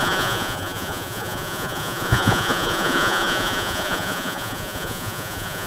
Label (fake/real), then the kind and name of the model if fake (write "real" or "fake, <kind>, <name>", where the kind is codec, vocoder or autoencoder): fake, vocoder, Vocos